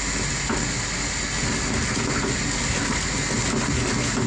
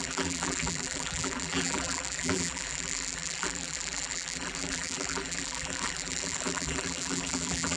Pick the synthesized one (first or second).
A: second